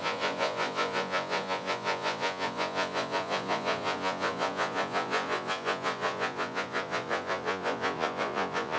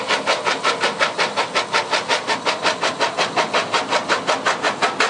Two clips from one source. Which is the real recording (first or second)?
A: second